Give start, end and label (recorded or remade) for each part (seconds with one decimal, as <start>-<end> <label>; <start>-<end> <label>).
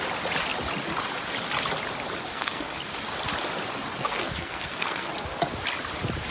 0.0-2.3 recorded; 2.3-2.8 remade; 2.8-4.0 recorded; 4.0-5.1 remade; 5.1-6.3 recorded